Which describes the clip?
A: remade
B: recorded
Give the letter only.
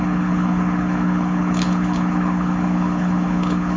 A